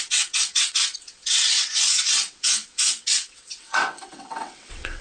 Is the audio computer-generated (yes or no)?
yes